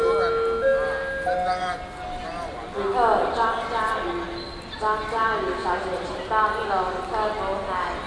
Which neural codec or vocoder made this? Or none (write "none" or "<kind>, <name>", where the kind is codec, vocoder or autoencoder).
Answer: none